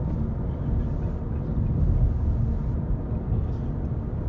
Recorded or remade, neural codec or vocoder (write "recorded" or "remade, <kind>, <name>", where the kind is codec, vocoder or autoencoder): recorded